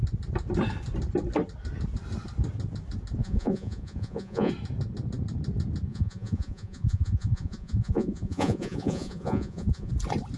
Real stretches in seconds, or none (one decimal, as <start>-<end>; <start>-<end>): 0.0-3.2; 4.5-5.9; 9.9-10.4

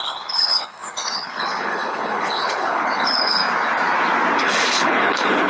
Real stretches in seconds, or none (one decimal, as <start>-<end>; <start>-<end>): 3.4-4.4

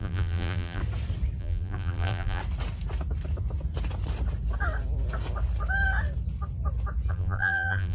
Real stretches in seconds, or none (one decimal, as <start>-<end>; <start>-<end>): 0.8-1.4; 2.4-7.1

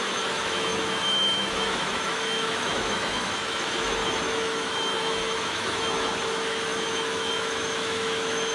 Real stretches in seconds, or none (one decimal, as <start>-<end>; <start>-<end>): none